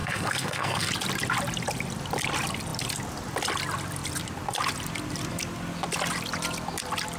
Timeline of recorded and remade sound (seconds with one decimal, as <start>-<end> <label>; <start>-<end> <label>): 0.0-0.9 remade; 0.9-7.2 recorded